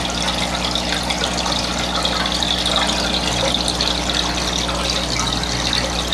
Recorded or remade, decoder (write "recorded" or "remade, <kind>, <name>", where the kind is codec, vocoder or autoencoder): recorded